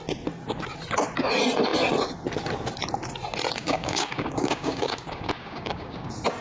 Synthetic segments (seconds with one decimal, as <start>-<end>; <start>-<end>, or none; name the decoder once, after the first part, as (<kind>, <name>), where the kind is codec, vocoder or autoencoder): 3.6-6.0 (codec, DAC)